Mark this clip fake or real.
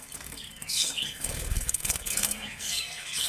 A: fake